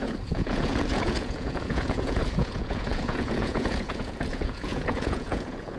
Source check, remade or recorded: remade